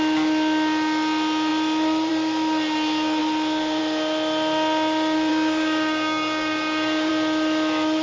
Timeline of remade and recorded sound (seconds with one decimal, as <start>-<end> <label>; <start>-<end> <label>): 0.0-5.3 recorded; 5.3-7.1 remade; 7.1-8.0 recorded